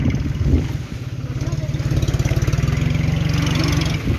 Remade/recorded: recorded